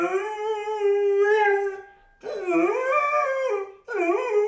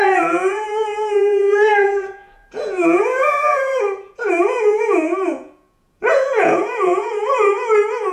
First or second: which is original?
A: first